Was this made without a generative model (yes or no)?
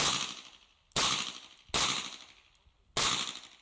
yes